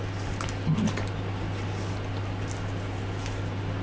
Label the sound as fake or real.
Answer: real